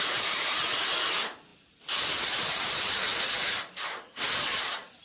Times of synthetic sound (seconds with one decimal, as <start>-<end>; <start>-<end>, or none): none